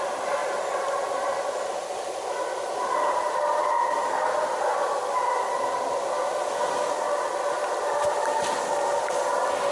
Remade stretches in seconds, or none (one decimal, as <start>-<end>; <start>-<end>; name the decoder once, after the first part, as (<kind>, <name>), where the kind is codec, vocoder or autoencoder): none